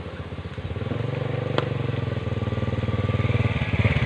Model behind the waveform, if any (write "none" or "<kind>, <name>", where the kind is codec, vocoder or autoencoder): none